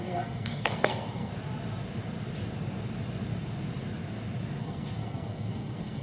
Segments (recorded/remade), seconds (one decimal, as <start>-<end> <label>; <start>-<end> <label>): 0.0-1.3 remade; 1.3-4.6 recorded; 4.6-6.0 remade